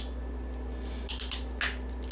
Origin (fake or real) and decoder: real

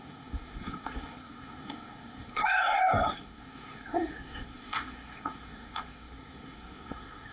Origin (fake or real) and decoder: fake, codec, SNAC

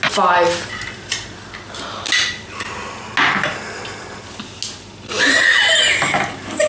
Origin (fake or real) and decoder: real